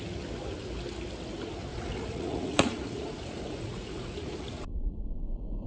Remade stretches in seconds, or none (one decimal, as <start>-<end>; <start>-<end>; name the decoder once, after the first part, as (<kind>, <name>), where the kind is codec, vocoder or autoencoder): 1.7-5.1 (vocoder, Vocos)